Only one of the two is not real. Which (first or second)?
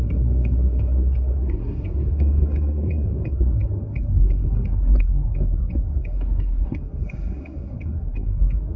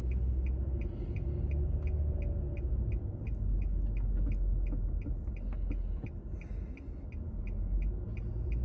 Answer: first